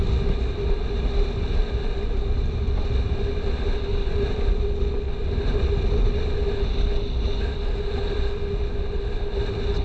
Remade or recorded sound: recorded